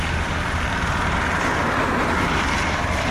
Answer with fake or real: real